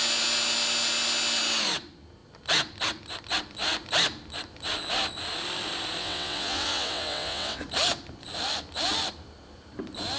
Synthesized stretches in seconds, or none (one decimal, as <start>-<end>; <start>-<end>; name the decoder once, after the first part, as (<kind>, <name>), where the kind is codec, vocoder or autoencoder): 6.0-7.6 (vocoder, WaveNeXt)